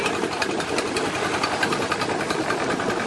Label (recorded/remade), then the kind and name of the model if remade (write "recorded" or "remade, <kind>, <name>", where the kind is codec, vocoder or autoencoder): recorded